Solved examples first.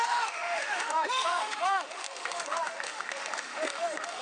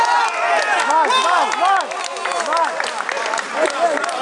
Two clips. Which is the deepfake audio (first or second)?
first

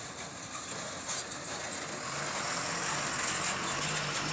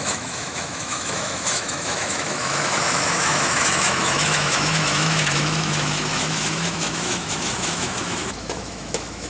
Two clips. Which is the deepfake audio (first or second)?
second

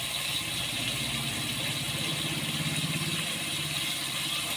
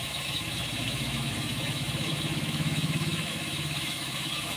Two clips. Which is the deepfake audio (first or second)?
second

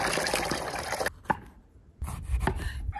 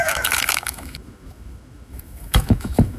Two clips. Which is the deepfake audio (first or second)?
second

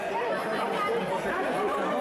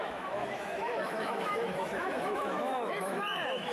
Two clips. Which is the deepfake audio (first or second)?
second